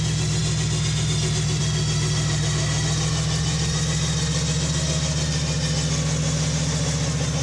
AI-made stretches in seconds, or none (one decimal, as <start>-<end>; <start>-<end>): none